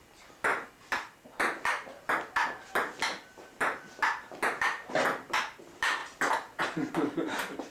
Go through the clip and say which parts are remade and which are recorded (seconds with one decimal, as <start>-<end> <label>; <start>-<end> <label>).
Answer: 0.0-7.7 recorded